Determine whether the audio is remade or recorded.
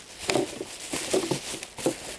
recorded